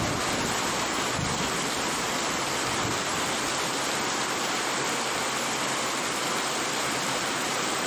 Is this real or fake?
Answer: real